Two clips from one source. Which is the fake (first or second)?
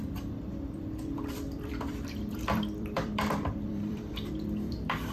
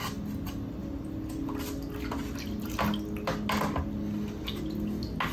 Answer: first